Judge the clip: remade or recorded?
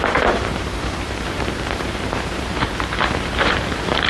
remade